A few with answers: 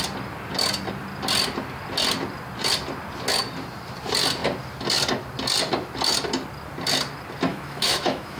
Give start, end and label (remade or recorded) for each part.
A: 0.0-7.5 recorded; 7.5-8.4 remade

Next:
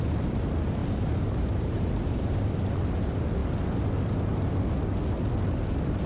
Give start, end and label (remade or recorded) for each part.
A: 0.0-0.8 recorded; 0.8-2.9 remade; 2.9-6.1 recorded

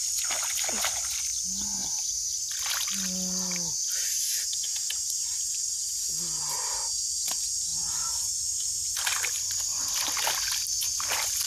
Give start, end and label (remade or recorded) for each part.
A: 0.0-1.8 recorded; 1.8-2.5 remade; 2.5-7.7 recorded; 7.7-8.3 remade; 8.3-11.5 recorded